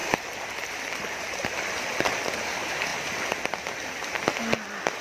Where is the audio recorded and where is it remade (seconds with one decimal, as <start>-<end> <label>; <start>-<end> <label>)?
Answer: 0.0-2.4 remade; 2.4-5.0 recorded

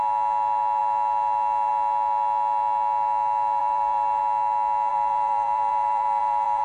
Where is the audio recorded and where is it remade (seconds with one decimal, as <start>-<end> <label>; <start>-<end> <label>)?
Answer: 0.0-3.6 recorded; 3.6-4.2 remade; 4.2-4.9 recorded; 4.9-6.6 remade